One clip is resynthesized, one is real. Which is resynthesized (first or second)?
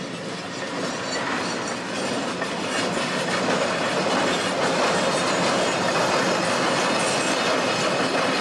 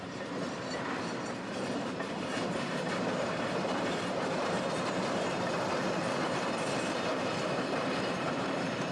second